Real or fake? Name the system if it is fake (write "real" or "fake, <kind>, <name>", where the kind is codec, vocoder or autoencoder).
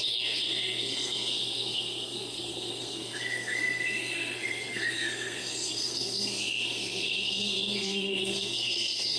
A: fake, codec, SNAC